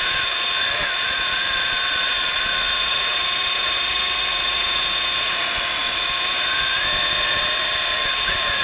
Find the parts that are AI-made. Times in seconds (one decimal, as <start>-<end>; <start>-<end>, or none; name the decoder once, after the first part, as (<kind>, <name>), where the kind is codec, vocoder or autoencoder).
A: 0.0-8.6 (vocoder, Vocos)